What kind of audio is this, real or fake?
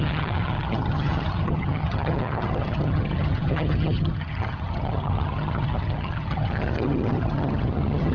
fake